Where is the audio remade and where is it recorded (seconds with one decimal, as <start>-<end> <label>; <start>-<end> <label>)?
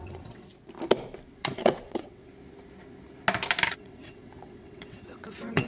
0.0-0.5 remade; 0.5-1.3 recorded; 1.3-2.3 remade; 2.3-3.7 recorded; 3.7-5.7 remade